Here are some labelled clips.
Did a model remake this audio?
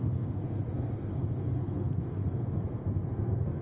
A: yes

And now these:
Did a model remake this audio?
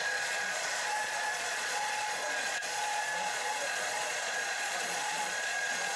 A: yes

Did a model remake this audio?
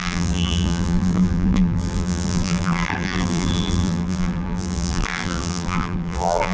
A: yes